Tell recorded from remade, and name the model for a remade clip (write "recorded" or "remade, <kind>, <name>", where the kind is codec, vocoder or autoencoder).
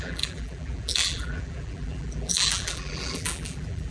remade, vocoder, BigVGAN v2